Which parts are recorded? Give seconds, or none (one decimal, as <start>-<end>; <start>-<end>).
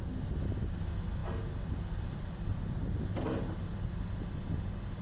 0.0-5.0